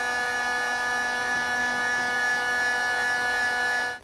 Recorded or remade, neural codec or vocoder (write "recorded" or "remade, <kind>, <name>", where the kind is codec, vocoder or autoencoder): recorded